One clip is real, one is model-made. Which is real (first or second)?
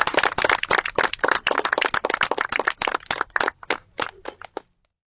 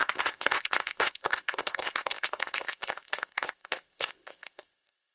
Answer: first